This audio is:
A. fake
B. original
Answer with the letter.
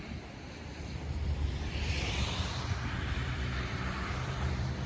A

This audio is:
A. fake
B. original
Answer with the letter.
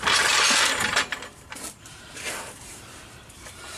A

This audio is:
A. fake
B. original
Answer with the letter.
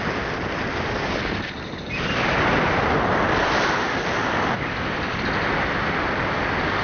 B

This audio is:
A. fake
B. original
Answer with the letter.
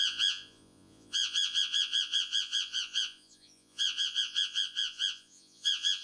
A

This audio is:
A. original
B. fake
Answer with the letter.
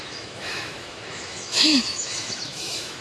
B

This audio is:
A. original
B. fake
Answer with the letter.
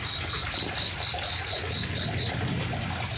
A